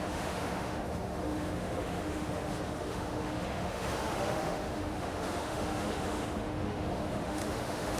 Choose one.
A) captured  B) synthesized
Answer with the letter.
B